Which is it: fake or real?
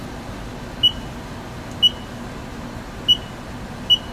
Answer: real